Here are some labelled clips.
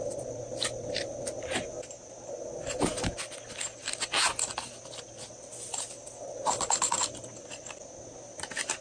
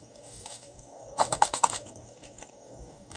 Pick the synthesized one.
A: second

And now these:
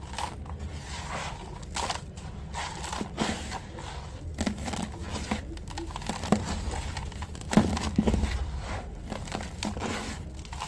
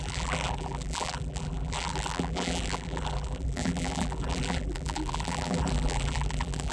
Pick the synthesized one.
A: second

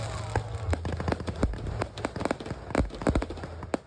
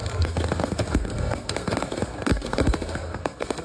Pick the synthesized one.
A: second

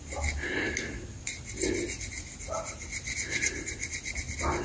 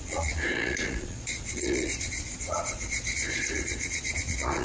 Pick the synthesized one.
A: second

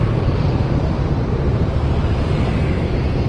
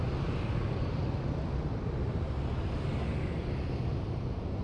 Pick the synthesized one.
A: first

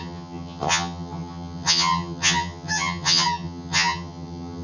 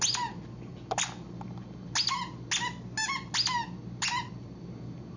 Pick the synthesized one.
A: first